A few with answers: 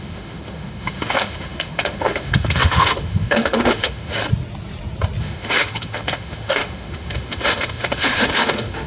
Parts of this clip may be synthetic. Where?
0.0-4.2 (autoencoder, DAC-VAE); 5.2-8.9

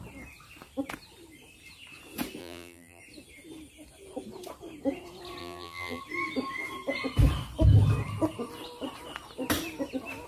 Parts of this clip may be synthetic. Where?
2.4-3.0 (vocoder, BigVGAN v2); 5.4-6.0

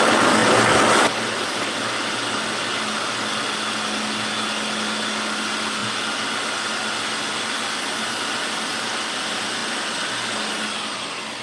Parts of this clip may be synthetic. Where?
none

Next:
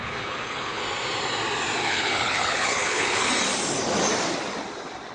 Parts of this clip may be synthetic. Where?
0.0-0.8 (codec, HILCodec); 1.8-3.3